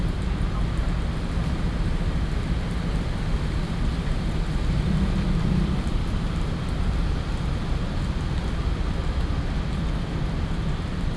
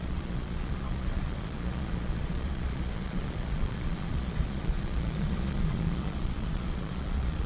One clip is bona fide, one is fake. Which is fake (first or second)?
second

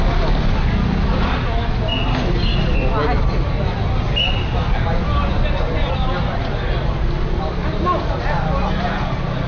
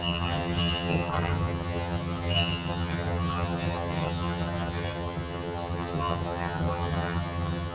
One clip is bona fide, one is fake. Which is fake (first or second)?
second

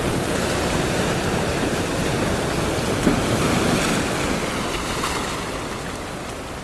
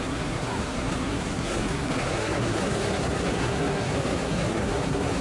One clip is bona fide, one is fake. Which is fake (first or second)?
second